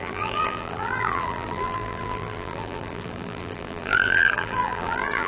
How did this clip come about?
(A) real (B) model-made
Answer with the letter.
B